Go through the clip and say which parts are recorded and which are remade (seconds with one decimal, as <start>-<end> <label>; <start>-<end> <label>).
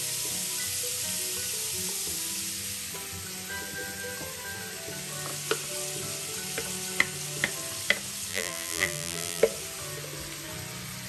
0.0-8.3 recorded; 8.3-9.4 remade; 9.4-11.1 recorded